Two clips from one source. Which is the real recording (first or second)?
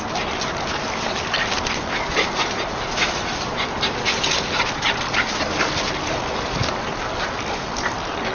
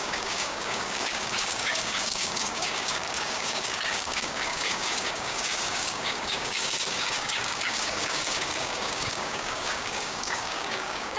first